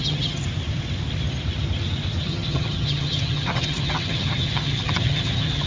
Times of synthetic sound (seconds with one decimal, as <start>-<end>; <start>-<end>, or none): 0.0-0.4; 2.2-5.7